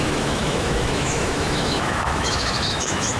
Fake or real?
fake